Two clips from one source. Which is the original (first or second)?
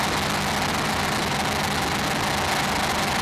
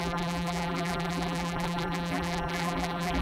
first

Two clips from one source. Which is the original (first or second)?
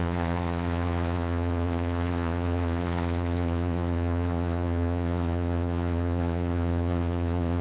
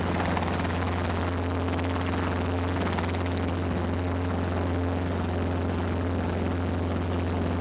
second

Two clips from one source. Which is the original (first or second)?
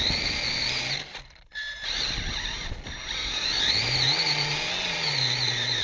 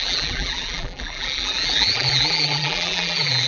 first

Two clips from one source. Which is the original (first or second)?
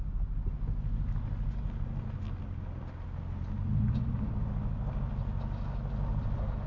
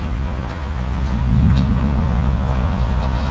first